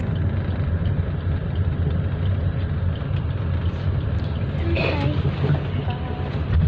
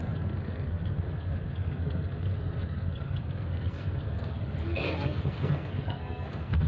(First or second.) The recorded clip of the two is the first